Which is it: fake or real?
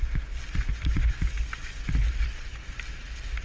real